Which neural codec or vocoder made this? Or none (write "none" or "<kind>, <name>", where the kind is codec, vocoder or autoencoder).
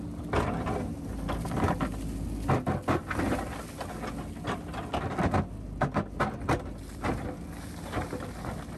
none